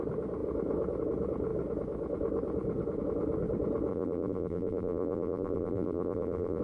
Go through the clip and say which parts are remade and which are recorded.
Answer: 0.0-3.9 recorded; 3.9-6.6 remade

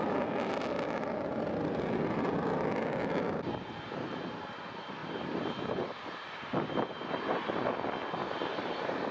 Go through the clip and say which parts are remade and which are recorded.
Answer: 0.0-5.0 recorded; 5.0-7.7 remade; 7.7-8.2 recorded; 8.2-9.1 remade

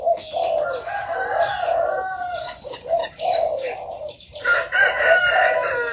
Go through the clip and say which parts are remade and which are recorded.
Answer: 0.0-3.0 recorded; 3.0-5.2 remade; 5.2-5.9 recorded

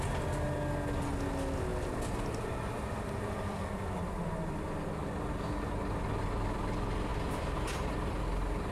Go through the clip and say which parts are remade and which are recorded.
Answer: 0.0-7.1 recorded; 7.1-8.2 remade; 8.2-8.7 recorded